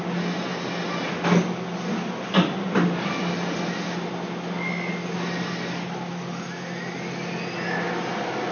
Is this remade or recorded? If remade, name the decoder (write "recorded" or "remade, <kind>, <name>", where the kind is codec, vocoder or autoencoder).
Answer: recorded